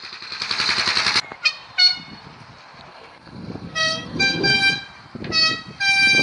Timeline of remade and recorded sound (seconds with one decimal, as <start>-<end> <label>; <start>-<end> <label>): 0.0-2.9 recorded; 2.9-4.6 remade; 4.6-6.2 recorded